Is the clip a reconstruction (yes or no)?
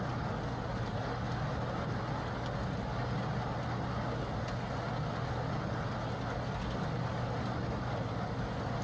no